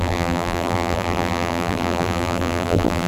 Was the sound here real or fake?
fake